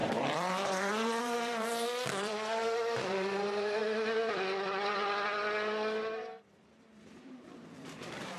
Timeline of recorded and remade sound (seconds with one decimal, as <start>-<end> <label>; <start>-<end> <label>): 0.0-3.8 remade; 3.8-7.1 recorded; 7.1-8.4 remade